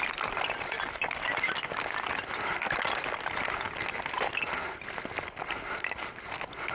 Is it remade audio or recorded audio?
recorded